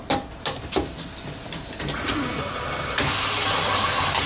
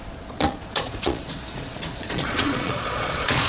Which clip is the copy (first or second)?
second